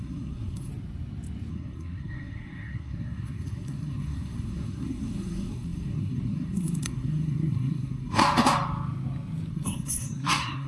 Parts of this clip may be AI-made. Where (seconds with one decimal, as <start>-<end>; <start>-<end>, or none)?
0.0-0.7; 1.5-8.2; 9.5-10.7